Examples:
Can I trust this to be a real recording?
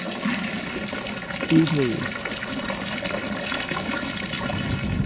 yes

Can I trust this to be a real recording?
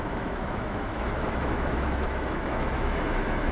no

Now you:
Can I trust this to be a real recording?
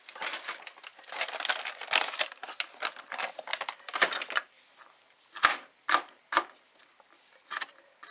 yes